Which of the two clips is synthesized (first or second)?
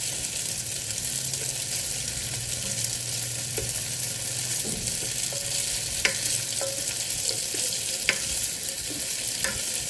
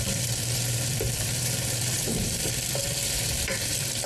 second